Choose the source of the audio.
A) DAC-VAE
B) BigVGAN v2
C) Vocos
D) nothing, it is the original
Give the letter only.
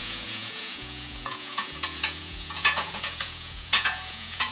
C